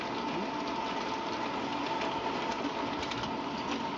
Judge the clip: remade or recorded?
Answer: recorded